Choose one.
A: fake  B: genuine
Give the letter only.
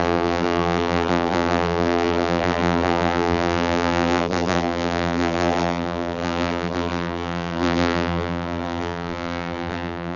A